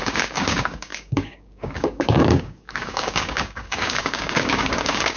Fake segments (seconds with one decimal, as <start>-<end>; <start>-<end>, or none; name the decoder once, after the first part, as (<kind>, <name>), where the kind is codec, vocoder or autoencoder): 0.0-5.2 (codec, DAC)